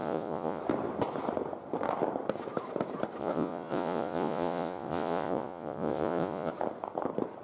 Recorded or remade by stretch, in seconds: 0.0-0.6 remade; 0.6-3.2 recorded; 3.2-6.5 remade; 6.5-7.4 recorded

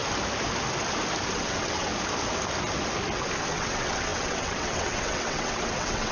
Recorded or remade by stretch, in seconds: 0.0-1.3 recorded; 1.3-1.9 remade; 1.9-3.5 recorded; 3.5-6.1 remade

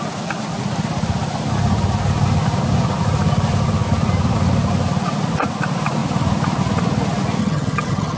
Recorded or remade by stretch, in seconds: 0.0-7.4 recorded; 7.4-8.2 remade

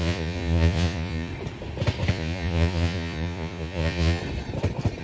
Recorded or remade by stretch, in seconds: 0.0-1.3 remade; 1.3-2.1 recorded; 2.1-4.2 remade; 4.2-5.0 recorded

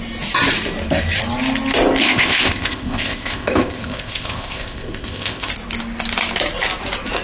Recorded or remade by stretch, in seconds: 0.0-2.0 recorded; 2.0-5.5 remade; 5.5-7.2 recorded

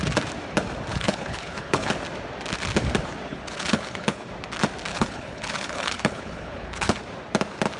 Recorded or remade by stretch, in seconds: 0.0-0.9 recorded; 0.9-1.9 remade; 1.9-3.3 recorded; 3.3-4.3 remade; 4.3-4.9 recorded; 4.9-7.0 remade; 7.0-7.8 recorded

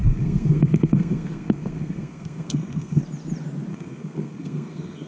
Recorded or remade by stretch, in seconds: 0.0-3.0 remade; 3.0-3.7 recorded; 3.7-5.1 remade